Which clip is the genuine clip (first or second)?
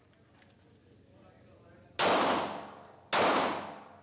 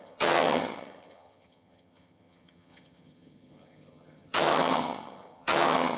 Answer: first